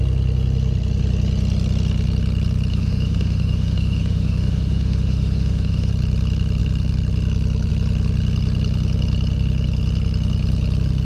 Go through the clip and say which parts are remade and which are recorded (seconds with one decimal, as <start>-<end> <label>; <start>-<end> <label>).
0.0-2.7 recorded; 2.7-5.9 remade; 5.9-11.0 recorded